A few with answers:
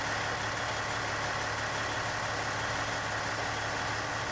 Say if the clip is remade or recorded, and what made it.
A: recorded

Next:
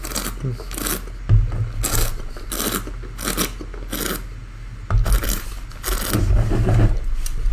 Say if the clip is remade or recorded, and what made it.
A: recorded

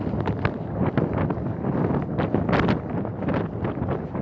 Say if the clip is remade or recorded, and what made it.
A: recorded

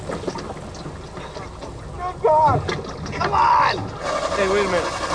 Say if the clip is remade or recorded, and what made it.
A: recorded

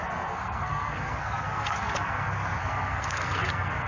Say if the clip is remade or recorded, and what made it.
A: remade, codec, SNAC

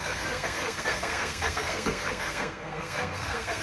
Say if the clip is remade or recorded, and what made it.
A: remade, codec, SNAC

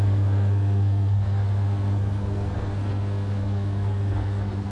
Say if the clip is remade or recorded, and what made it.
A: remade, codec, SNAC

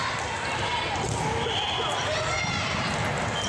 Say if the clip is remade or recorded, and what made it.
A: recorded